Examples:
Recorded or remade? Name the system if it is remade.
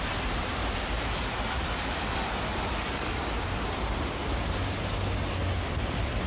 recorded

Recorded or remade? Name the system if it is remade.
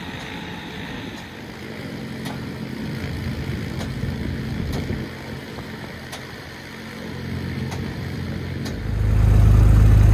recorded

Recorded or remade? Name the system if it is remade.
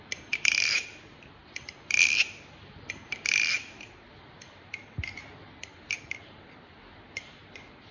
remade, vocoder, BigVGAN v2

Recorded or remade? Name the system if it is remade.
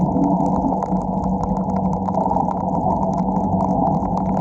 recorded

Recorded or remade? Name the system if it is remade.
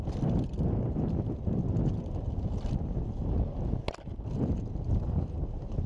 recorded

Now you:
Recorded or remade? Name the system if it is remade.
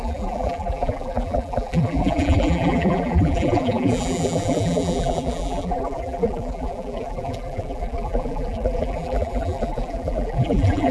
remade, vocoder, BigVGAN v2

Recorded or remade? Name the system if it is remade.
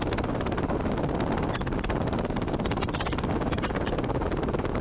recorded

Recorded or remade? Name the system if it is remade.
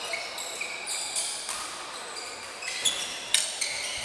recorded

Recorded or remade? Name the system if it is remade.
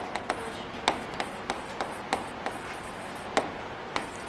recorded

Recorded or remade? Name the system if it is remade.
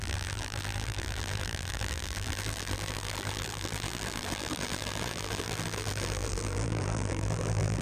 remade, vocoder, BigVGAN v2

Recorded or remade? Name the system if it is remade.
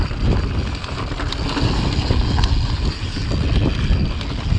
recorded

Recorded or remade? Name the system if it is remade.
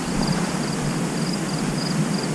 recorded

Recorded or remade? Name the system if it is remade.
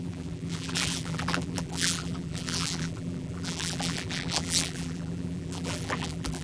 remade, vocoder, BigVGAN v2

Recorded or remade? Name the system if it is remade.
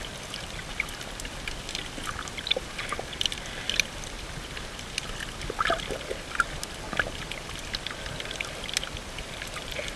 recorded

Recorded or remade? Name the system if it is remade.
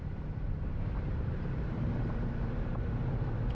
remade, vocoder, BigVGAN v2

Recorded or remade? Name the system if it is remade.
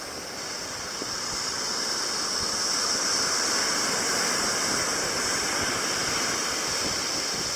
recorded